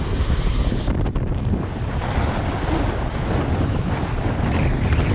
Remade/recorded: recorded